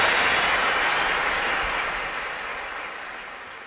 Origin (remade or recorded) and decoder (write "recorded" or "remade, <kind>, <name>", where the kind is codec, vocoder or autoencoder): recorded